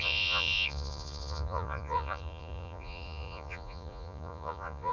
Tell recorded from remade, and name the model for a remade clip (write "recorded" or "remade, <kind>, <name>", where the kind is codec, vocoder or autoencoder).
remade, vocoder, Vocos